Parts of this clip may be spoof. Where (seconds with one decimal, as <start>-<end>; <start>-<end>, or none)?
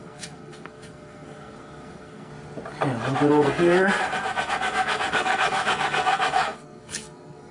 0.0-2.3; 3.3-7.5